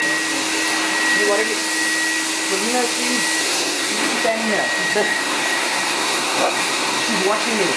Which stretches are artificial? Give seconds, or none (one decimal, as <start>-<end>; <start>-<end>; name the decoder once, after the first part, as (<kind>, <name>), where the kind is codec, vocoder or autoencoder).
3.4-4.2 (codec, SNAC); 4.9-7.0